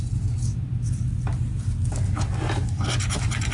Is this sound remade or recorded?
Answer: recorded